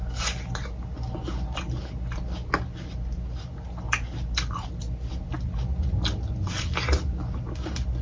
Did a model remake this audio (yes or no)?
no